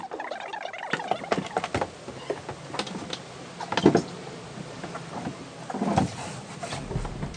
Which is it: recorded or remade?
recorded